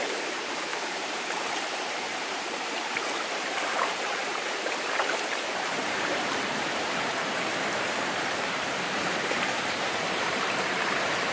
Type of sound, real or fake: fake